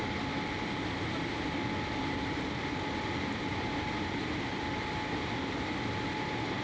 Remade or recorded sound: recorded